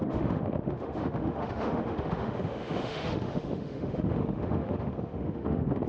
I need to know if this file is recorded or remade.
remade